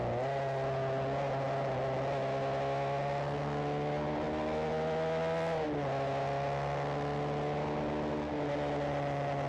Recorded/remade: recorded